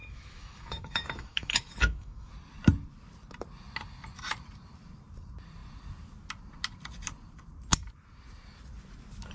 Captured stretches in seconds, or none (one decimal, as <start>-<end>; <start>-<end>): 2.3-9.3

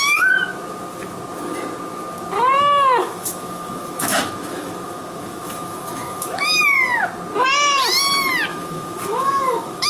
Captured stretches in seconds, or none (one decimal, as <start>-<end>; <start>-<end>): 0.0-3.0; 6.6-8.5

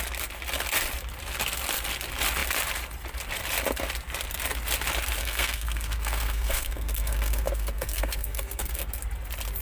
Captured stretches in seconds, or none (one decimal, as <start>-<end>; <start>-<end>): 0.0-5.2; 8.9-9.6

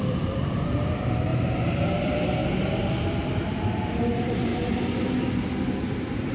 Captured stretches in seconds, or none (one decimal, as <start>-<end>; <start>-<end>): 1.3-2.0; 2.4-3.1; 4.5-6.3

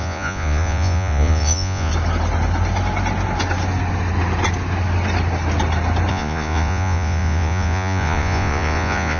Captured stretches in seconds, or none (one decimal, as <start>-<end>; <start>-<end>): 1.9-6.1

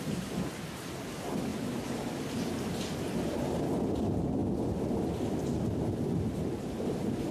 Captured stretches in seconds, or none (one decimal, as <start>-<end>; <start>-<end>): 0.0-7.3

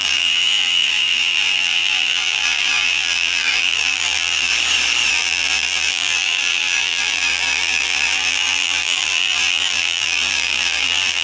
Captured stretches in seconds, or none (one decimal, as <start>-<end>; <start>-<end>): 4.5-5.1